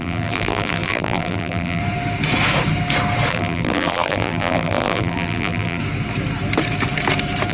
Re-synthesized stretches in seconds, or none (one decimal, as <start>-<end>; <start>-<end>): 0.0-1.8; 3.3-5.8